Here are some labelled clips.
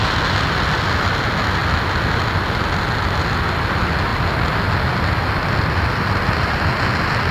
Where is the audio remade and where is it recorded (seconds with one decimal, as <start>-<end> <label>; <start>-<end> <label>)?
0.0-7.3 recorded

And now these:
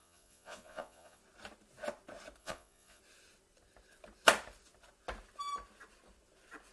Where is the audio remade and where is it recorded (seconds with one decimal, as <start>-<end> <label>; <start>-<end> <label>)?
0.0-1.2 remade; 1.2-2.4 recorded; 2.4-3.0 remade; 3.0-6.7 recorded

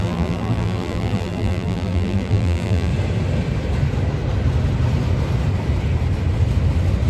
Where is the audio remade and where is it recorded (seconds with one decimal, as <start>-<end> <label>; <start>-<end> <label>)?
0.0-2.9 remade; 2.9-7.1 recorded

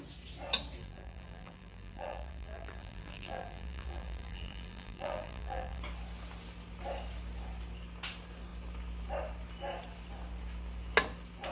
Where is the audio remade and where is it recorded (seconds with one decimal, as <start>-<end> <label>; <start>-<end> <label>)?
0.0-0.8 recorded; 0.8-5.8 remade; 5.8-11.5 recorded

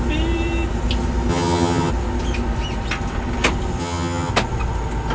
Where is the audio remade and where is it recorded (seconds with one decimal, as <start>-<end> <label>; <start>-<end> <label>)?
0.0-1.3 recorded; 1.3-1.9 remade; 1.9-3.8 recorded; 3.8-4.3 remade; 4.3-5.1 recorded

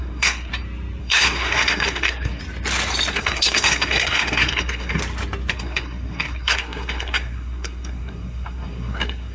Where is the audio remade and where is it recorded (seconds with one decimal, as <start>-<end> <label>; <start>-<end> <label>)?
0.0-0.5 remade; 0.5-1.0 recorded; 1.0-2.4 remade; 2.4-3.1 recorded; 3.1-5.0 remade; 5.0-5.5 recorded; 5.5-9.3 remade